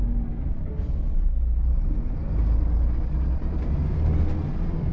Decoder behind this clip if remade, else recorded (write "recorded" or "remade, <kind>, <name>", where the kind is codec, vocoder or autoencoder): recorded